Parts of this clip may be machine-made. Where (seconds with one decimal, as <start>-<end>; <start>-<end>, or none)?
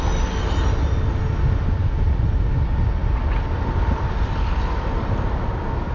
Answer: none